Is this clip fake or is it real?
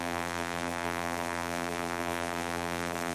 fake